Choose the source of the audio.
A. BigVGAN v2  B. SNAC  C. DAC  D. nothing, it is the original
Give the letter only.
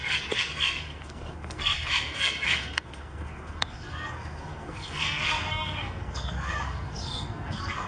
B